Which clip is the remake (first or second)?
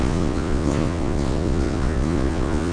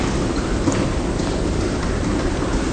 first